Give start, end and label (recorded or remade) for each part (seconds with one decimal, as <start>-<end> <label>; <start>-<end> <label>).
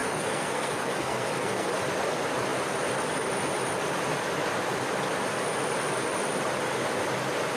0.0-1.7 remade; 1.7-7.6 recorded